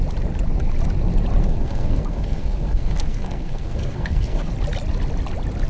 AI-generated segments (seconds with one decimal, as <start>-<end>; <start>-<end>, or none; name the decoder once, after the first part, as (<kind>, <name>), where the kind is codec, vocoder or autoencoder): 1.4-4.5 (codec, SNAC)